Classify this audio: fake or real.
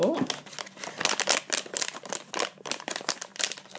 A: real